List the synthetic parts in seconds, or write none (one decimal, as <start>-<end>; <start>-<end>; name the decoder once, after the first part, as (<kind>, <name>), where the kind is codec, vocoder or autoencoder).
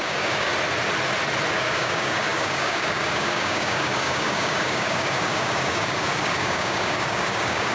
0.0-0.5 (codec, DAC); 1.5-7.7